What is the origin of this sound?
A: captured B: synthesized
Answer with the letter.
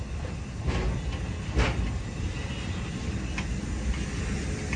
A